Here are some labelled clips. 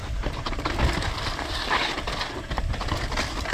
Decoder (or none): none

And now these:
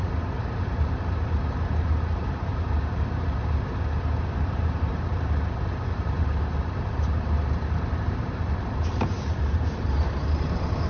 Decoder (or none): vocoder, BigVGAN v2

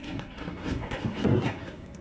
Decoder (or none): codec, SNAC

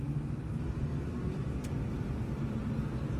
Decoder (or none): none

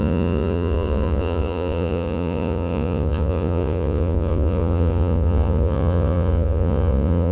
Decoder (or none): vocoder, Vocos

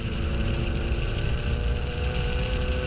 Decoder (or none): vocoder, BigVGAN v2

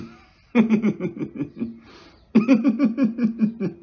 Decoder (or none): none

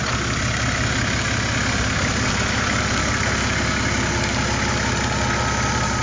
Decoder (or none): none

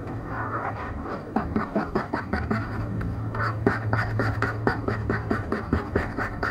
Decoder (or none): codec, DAC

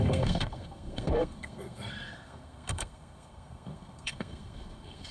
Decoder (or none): codec, SNAC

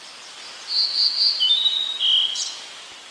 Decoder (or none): none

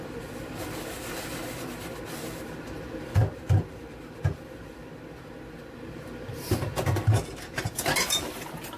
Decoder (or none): vocoder, BigVGAN v2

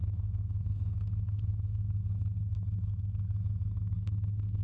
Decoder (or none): codec, SNAC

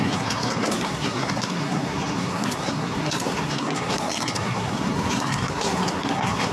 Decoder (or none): codec, SNAC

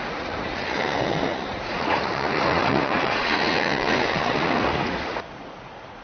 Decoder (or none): vocoder, Vocos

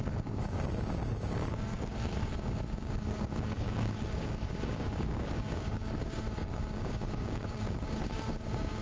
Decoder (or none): codec, DAC